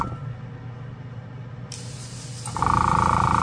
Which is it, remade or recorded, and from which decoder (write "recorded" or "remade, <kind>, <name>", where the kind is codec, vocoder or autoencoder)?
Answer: recorded